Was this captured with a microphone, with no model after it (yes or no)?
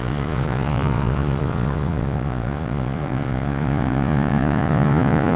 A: no